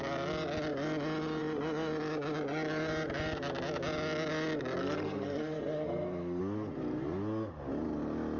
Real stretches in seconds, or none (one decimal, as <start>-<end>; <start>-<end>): 0.0-4.8; 6.4-8.4